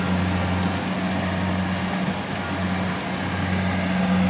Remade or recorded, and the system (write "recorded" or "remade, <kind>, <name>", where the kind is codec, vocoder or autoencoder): recorded